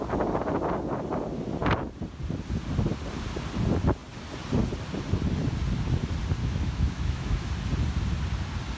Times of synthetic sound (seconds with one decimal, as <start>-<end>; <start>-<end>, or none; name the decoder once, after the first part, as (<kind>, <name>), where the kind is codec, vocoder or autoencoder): 6.4-7.5 (autoencoder, DAC-VAE)

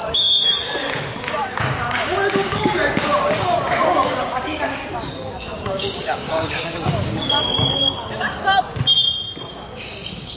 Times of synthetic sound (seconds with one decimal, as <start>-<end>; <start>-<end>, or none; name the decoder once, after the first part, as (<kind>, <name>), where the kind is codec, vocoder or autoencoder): 0.0-8.5 (codec, DAC); 9.5-10.4

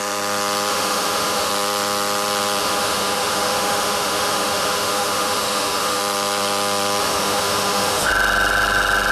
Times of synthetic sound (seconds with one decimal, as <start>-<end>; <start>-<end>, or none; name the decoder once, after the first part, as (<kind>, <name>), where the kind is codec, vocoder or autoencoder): 0.7-1.5 (autoencoder, DAC-VAE); 2.6-6.0; 7.0-8.1

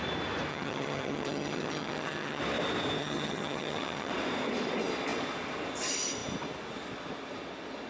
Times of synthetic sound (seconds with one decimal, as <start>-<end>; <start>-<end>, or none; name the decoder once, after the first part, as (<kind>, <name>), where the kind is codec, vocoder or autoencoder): 0.5-2.4 (vocoder, HiFi-GAN); 3.0-4.1

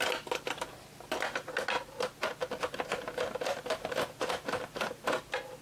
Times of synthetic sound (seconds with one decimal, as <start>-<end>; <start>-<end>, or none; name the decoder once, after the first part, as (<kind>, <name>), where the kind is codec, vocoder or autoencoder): 2.4-5.1 (vocoder, BigVGAN v2)

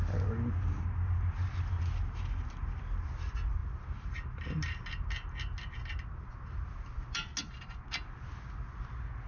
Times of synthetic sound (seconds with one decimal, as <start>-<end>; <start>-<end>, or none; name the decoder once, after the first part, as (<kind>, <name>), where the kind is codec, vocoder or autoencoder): none

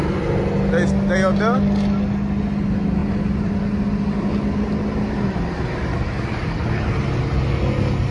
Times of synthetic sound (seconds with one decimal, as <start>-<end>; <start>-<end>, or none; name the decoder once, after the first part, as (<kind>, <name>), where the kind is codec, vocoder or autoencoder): none